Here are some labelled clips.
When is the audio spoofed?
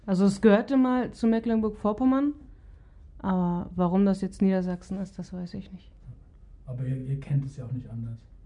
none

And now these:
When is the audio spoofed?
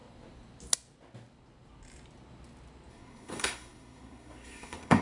2.9-5.0 (codec, SNAC)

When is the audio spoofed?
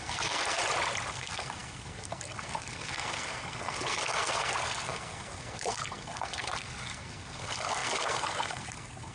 0.0-0.6 (codec, SNAC); 1.1-9.1